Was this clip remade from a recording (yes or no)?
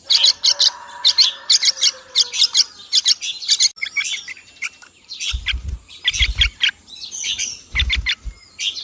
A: no